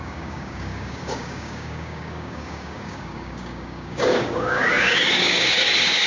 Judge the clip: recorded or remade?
remade